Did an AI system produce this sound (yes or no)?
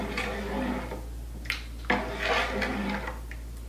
no